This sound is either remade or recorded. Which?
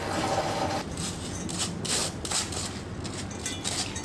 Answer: recorded